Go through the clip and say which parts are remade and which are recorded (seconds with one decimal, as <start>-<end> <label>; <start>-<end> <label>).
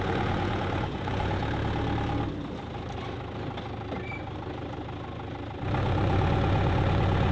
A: 0.0-1.4 remade; 1.4-5.8 recorded; 5.8-7.3 remade